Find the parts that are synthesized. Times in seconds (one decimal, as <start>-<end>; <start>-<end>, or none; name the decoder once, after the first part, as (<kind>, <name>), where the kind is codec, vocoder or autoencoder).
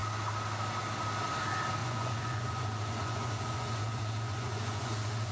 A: 1.8-5.3 (vocoder, Vocos)